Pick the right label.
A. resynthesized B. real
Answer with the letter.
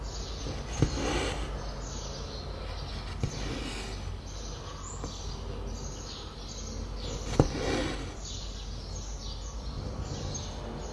B